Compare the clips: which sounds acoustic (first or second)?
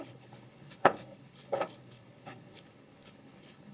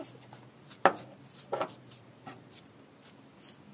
second